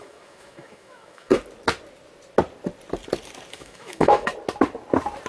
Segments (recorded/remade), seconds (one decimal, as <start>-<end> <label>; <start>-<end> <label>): 0.0-1.3 remade; 1.3-3.5 recorded; 3.5-4.3 remade; 4.3-5.3 recorded